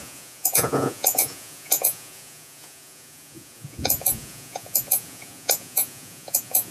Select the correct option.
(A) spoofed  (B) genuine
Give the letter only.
A